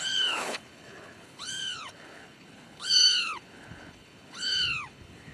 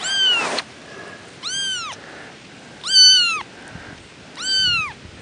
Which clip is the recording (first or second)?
second